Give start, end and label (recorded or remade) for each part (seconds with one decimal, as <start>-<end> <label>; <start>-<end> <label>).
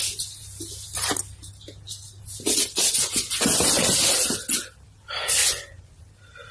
0.0-5.4 recorded; 5.4-5.9 remade; 5.9-6.5 recorded